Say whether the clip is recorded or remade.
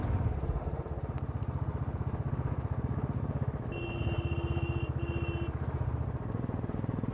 recorded